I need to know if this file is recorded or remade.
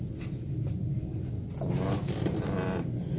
recorded